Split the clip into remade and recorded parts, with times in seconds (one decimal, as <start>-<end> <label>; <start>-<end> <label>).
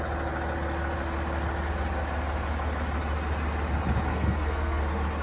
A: 0.0-4.1 recorded; 4.1-4.8 remade; 4.8-5.2 recorded